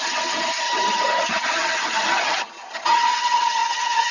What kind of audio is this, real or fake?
fake